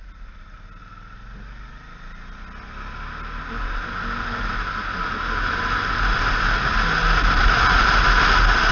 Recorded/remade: recorded